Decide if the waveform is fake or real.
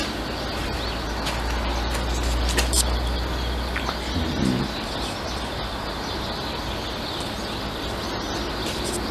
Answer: real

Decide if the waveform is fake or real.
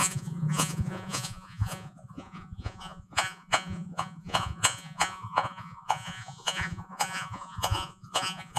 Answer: fake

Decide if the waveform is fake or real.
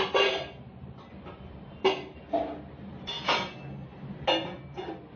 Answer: real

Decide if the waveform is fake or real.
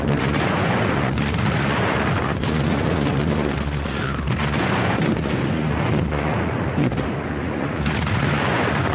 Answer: fake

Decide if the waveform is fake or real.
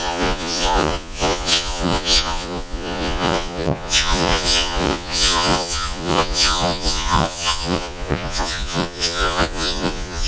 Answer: fake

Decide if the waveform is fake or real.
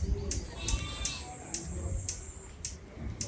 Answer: real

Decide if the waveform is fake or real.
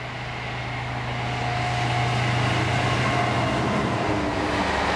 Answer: real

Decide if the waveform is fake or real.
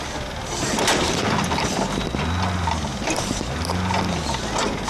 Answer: real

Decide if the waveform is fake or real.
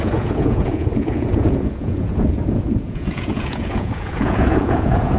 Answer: fake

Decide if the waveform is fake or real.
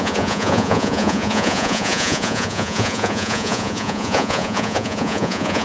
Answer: fake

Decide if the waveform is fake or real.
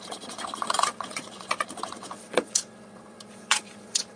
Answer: fake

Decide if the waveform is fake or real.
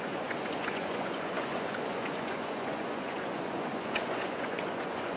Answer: fake